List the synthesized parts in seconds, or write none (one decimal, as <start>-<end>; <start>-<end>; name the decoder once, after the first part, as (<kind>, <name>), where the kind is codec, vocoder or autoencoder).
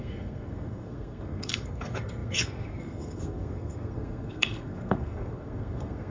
0.0-6.1 (codec, SNAC)